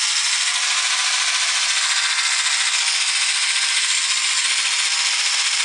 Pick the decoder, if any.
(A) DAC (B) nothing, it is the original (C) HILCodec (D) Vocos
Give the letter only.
B